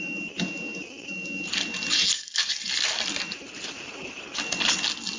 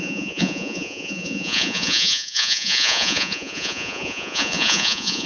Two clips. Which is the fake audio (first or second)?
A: second